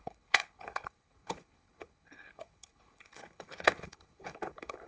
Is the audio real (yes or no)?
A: no